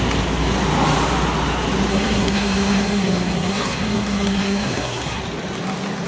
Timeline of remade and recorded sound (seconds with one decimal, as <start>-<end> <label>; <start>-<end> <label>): 0.0-1.9 recorded; 1.9-5.2 remade; 5.2-6.1 recorded